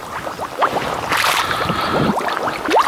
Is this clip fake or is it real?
real